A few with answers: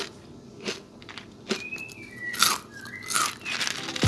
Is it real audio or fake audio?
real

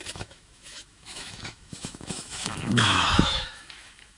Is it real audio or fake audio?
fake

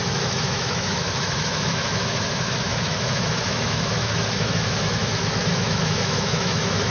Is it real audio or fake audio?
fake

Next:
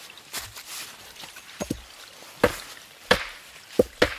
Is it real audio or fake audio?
real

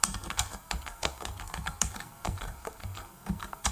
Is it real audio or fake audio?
fake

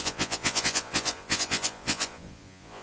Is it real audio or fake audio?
fake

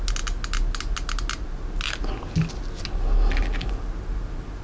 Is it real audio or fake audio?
real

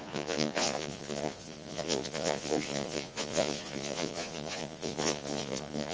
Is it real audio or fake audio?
fake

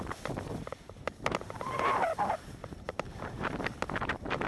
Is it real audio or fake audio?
fake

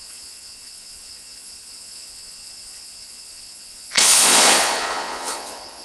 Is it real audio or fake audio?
fake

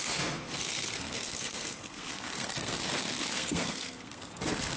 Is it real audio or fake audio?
fake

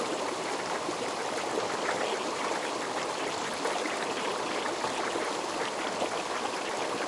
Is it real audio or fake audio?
fake